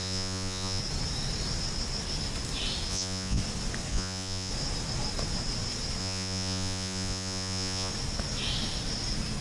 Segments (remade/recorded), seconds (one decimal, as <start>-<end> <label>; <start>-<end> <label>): 0.0-0.8 remade; 0.8-2.9 recorded; 2.9-3.4 remade; 3.4-3.9 recorded; 3.9-4.5 remade; 4.5-6.0 recorded; 6.0-7.9 remade; 7.9-9.4 recorded